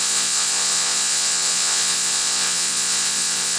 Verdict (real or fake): fake